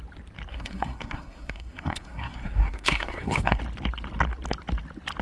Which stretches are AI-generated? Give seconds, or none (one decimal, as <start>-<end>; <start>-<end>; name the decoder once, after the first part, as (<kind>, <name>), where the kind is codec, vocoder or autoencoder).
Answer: 0.5-3.6 (codec, SNAC)